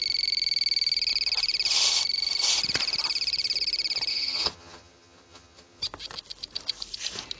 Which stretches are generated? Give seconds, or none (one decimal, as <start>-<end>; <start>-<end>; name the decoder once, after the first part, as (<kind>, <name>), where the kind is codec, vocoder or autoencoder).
4.1-5.8 (vocoder, HiFi-GAN)